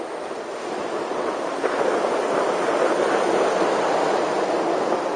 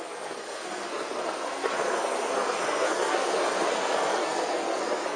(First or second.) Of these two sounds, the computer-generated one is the second